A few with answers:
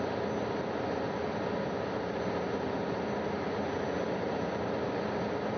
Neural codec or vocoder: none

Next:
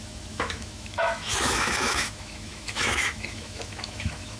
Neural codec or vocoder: autoencoder, DAC-VAE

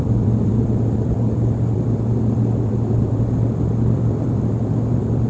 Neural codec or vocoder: vocoder, BigVGAN v2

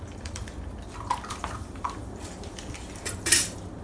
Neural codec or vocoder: vocoder, BigVGAN v2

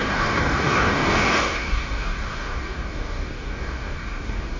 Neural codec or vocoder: codec, DAC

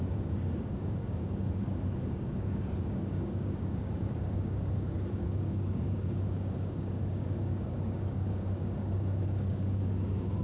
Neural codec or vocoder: codec, DAC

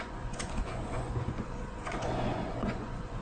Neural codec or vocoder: vocoder, Vocos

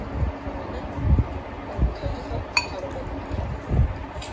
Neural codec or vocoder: none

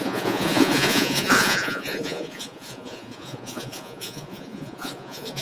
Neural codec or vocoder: vocoder, Vocos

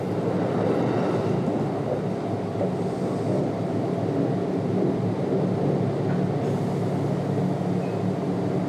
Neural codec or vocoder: none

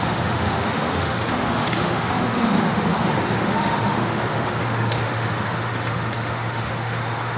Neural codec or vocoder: autoencoder, DAC-VAE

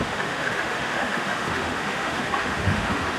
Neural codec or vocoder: autoencoder, DAC-VAE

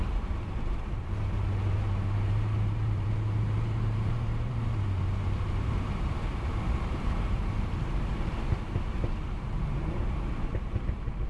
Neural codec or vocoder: vocoder, BigVGAN v2